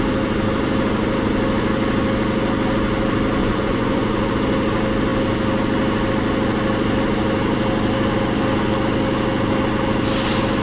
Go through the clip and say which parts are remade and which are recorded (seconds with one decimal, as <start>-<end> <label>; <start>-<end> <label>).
0.0-3.4 recorded; 3.4-4.3 remade; 4.3-10.6 recorded